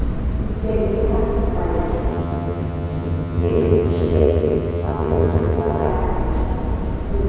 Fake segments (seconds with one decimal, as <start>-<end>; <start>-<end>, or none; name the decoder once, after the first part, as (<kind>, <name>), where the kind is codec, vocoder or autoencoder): 2.1-5.9 (vocoder, HiFi-GAN)